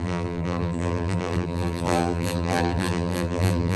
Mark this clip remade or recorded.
remade